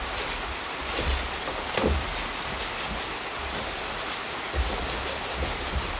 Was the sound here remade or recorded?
recorded